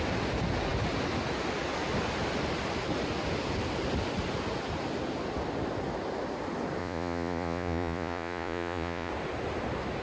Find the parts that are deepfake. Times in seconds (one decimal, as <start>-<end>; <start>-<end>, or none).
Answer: 6.8-9.1